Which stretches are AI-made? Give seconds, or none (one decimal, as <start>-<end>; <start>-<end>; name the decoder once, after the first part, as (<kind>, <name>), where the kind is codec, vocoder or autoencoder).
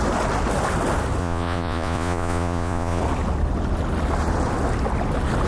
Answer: 1.2-3.0 (vocoder, Vocos)